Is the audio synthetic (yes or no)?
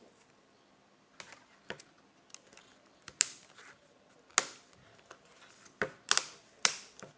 no